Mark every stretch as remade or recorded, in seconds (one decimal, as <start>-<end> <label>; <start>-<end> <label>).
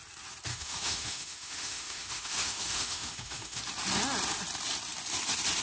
0.0-0.5 recorded; 0.5-3.6 remade; 3.6-5.6 recorded